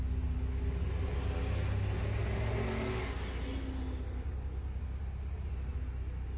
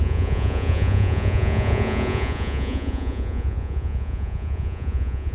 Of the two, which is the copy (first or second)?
second